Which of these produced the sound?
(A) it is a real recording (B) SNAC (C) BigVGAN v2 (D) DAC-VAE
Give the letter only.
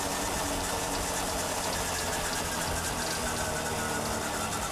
A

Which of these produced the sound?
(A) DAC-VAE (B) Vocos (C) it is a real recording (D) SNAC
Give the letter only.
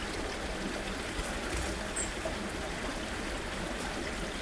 C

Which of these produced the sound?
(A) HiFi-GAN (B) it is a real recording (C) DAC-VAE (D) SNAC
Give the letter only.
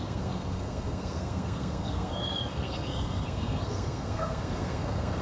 D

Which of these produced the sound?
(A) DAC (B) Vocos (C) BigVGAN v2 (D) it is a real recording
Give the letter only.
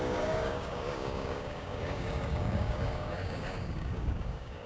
A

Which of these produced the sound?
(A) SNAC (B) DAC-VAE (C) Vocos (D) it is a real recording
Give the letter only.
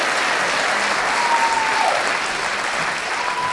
D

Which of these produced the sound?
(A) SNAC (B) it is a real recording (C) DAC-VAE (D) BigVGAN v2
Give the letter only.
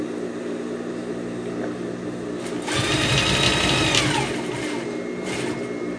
B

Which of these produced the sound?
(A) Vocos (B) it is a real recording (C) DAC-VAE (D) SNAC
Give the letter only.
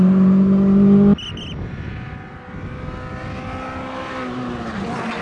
B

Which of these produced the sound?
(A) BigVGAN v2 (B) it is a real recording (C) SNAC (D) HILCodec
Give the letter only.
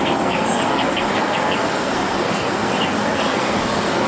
C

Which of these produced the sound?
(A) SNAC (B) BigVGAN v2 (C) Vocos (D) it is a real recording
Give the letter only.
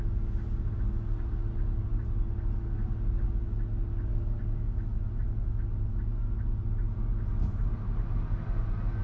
D